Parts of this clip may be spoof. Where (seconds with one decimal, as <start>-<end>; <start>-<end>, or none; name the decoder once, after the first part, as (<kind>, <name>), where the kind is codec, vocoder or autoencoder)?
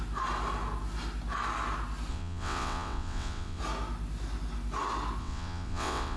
2.1-3.6 (vocoder, WaveNeXt); 5.2-6.2